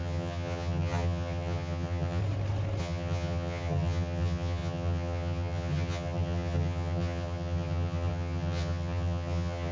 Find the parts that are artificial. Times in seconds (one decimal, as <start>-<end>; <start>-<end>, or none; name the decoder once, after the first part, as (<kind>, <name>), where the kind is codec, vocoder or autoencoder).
0.0-2.2 (vocoder, HiFi-GAN); 2.8-9.7